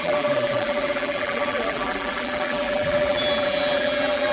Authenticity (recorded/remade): remade